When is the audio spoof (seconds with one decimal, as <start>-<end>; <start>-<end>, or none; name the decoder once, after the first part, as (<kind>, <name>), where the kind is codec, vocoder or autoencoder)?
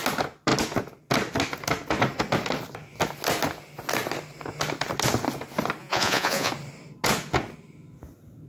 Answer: 5.8-6.5 (vocoder, Vocos)